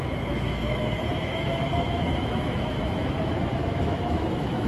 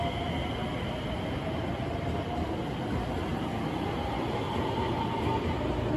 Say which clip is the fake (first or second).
first